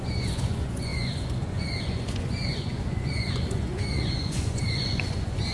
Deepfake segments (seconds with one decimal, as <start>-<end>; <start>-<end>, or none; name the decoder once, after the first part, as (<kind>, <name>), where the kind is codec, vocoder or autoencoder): 0.0-5.5 (vocoder, Vocos)